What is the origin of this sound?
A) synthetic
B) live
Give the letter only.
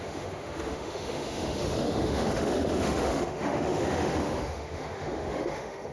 A